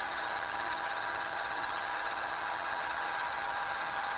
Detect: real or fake fake